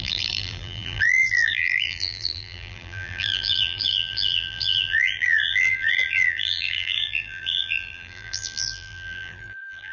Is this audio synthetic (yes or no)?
yes